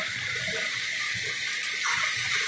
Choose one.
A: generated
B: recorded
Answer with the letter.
B